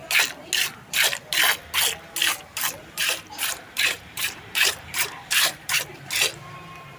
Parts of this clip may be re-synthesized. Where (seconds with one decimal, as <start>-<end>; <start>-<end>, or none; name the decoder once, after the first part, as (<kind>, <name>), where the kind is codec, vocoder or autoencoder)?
2.8-6.1 (vocoder, BigVGAN v2)